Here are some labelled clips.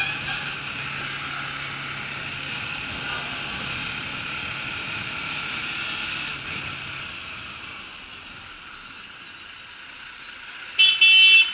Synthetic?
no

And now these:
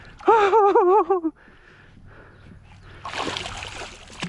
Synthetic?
no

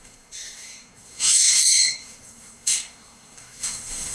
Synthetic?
yes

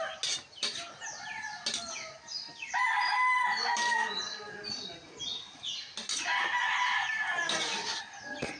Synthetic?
no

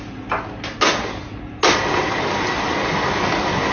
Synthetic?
no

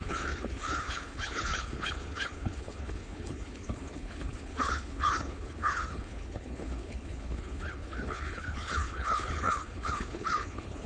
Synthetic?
yes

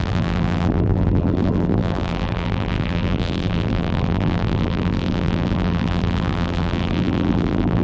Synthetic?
yes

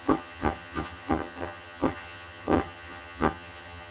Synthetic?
yes